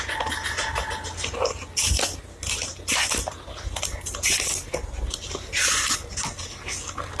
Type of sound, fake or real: real